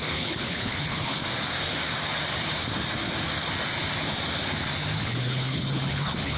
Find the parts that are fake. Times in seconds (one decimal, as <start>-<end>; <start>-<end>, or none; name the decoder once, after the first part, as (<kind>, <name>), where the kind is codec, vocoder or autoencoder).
0.0-1.2 (codec, HILCodec); 5.0-6.4